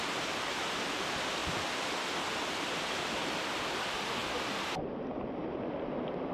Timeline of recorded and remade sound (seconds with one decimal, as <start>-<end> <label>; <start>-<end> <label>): 0.0-1.4 remade; 1.4-3.0 recorded; 3.0-6.3 remade